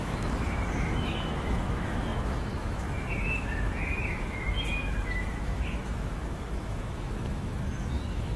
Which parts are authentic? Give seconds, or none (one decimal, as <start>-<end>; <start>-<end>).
none

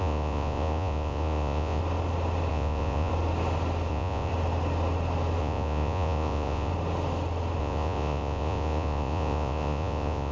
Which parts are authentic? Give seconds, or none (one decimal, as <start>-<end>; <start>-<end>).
1.8-2.5; 3.1-3.9; 4.3-5.4; 6.7-7.6

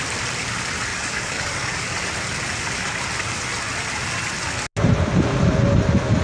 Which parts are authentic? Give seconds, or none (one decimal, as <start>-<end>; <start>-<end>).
0.0-0.9; 2.1-6.2

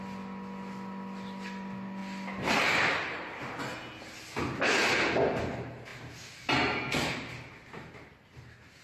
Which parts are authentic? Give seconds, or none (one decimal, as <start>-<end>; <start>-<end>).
0.0-2.0; 3.6-8.8

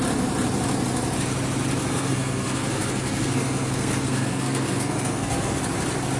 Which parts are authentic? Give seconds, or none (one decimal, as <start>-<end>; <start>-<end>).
0.0-1.9; 5.6-6.2

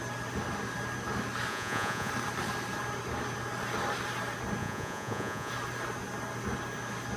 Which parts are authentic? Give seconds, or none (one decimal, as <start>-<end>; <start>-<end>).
0.0-1.5; 2.1-4.6; 5.5-7.2